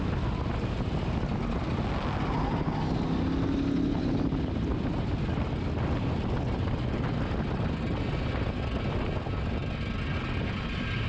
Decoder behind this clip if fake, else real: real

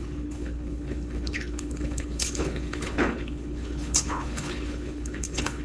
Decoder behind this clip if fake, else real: fake, codec, HILCodec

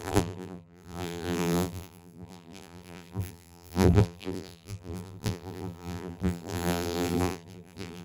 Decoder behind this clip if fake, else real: fake, vocoder, BigVGAN v2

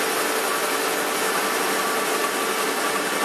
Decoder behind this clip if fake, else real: real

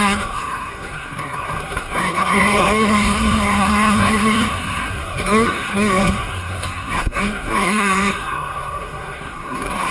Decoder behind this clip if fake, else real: fake, codec, SNAC